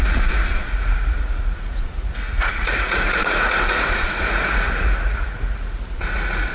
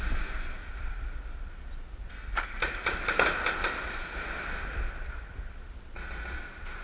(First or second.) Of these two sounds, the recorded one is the second